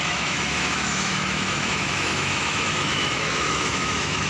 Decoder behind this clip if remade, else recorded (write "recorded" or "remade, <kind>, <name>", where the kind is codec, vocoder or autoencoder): remade, autoencoder, DAC-VAE